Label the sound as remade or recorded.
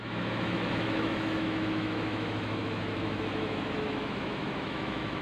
remade